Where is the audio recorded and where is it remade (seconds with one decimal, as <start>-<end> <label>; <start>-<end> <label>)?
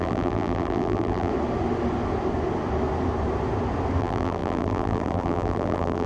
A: 0.0-1.3 remade; 1.3-4.0 recorded; 4.0-6.1 remade